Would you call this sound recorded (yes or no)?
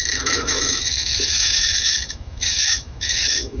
no